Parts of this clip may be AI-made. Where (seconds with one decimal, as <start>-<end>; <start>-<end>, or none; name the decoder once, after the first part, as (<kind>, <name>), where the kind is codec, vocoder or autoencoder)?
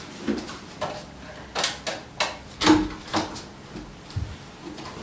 none